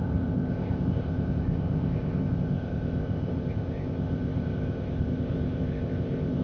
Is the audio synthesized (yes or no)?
yes